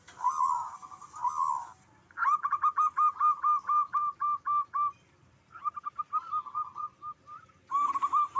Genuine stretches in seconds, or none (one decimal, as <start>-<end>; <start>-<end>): 0.0-8.4